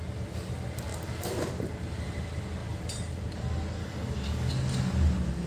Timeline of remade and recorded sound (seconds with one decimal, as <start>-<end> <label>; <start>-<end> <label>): 0.0-3.8 recorded; 3.8-4.5 remade; 4.5-5.5 recorded